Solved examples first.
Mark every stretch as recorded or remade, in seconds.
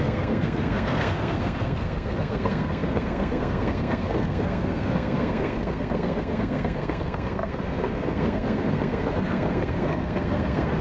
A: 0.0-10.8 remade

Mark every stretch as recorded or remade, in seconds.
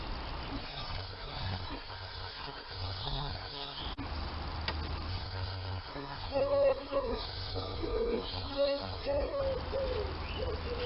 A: 0.0-0.6 recorded; 0.6-3.8 remade; 3.8-5.1 recorded; 5.1-9.4 remade; 9.4-10.9 recorded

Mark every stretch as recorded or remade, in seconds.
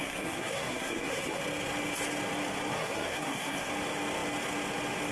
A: 0.0-1.4 remade; 1.4-2.7 recorded; 2.7-3.7 remade; 3.7-5.1 recorded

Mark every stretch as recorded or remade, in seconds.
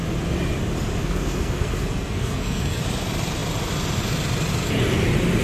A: 0.0-1.0 recorded; 1.0-2.8 remade; 2.8-5.4 recorded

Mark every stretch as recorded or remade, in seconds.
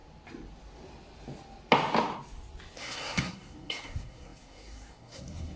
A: 0.0-2.8 recorded; 2.8-5.6 remade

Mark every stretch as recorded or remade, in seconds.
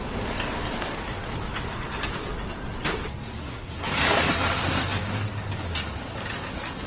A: 0.0-3.4 recorded; 3.4-3.9 remade; 3.9-6.9 recorded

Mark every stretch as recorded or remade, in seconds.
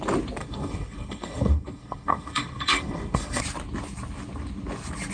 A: 0.0-0.4 recorded; 0.4-3.4 remade; 3.4-5.1 recorded